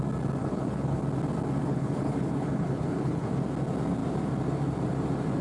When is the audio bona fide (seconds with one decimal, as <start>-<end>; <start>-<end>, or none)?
0.0-0.4; 1.0-1.6; 3.3-5.4